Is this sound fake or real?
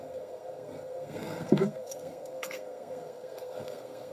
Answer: fake